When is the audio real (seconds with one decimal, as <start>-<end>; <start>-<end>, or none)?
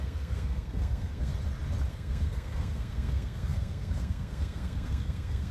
1.3-1.9